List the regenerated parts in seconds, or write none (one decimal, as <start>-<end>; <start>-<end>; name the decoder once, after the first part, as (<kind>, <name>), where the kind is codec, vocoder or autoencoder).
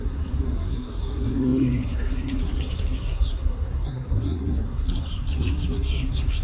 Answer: 0.0-6.4 (codec, SNAC)